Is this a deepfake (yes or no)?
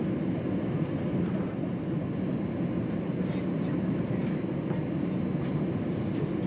no